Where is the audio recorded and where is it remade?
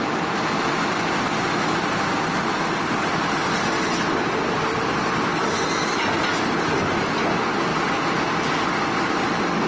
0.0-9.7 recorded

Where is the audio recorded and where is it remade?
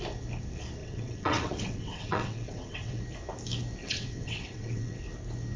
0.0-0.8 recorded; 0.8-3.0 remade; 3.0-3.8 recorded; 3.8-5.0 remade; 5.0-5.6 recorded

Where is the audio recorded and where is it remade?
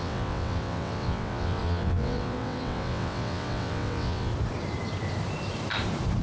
0.0-4.3 remade; 4.3-6.2 recorded